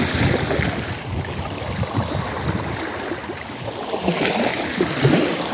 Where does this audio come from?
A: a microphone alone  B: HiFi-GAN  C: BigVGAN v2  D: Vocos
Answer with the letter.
A